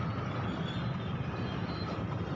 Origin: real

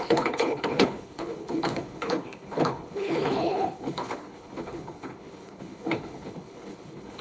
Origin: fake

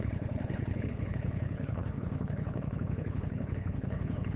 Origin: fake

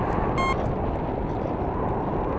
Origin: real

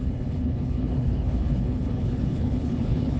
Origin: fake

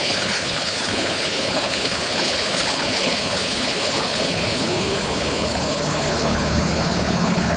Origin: fake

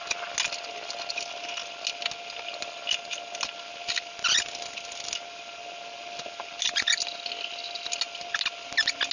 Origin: real